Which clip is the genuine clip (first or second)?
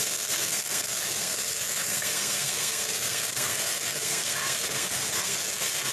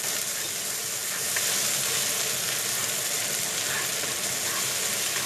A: second